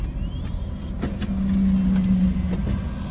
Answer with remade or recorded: recorded